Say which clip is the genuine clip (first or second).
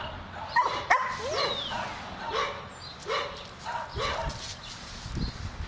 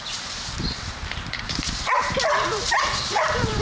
first